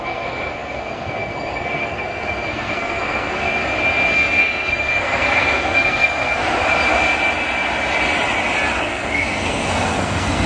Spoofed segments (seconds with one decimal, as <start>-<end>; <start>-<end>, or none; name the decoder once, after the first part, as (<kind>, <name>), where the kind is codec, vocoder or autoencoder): 0.0-3.6 (codec, SNAC); 4.1-6.6; 8.8-10.5